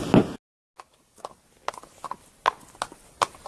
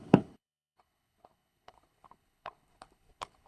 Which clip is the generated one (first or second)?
second